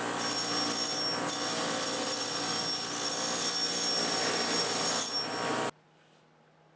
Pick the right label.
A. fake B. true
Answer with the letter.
B